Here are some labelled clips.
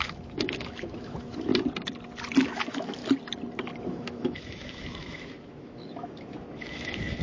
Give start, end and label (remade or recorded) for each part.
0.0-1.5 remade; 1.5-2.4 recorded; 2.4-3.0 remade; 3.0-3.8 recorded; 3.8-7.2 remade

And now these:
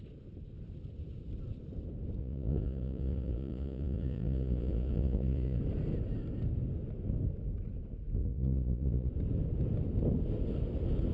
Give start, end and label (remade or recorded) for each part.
0.0-2.2 recorded; 2.2-5.6 remade; 5.6-8.2 recorded; 8.2-9.1 remade; 9.1-11.1 recorded